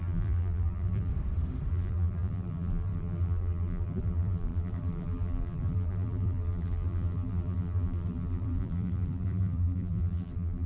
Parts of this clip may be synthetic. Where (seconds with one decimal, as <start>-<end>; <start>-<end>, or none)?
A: 0.0-1.1; 1.7-10.7